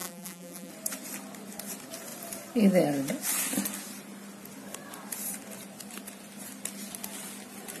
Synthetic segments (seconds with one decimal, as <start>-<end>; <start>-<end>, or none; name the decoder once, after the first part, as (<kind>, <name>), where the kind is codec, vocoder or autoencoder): 0.0-0.7 (vocoder, BigVGAN v2)

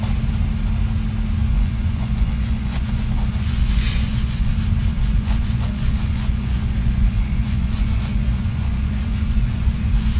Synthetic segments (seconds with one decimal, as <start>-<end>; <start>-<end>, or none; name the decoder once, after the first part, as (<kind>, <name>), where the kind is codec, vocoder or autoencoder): 1.4-4.5 (vocoder, Vocos); 4.9-10.2

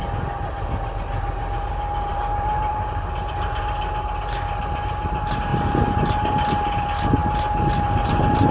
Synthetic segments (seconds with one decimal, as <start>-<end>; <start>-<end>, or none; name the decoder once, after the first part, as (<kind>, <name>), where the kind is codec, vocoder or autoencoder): 2.1-3.6 (vocoder, BigVGAN v2)